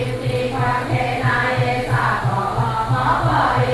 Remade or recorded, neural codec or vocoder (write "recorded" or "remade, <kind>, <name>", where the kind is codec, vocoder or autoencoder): recorded